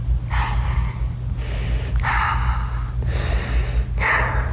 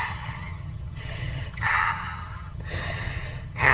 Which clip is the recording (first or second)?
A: first